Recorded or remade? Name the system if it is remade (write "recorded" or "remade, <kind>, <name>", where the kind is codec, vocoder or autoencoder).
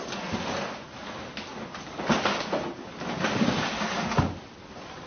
recorded